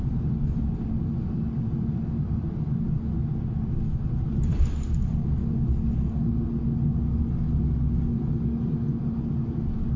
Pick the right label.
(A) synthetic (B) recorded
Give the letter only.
B